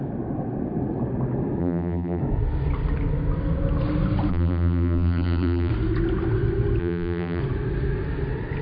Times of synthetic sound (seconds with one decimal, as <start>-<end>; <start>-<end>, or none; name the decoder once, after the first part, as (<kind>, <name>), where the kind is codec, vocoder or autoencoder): 1.6-2.2 (vocoder, BigVGAN v2); 4.3-5.7; 6.8-7.4